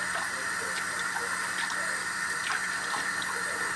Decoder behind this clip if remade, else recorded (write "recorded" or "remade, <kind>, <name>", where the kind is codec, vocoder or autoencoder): recorded